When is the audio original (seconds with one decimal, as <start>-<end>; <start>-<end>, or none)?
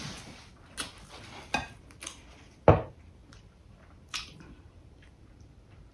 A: 0.0-3.2